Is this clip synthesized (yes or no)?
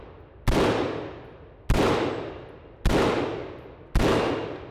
no